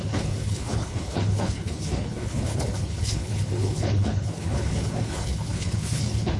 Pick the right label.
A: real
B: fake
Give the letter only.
B